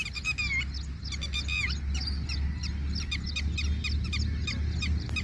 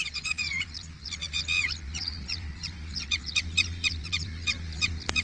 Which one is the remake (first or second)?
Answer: second